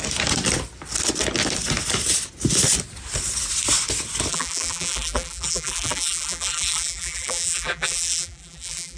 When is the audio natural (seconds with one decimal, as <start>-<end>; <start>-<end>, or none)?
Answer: 0.0-4.3